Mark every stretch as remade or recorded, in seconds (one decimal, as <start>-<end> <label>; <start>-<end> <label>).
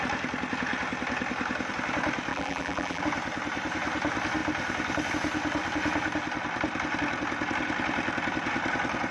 0.0-2.3 recorded; 2.3-3.0 remade; 3.0-9.1 recorded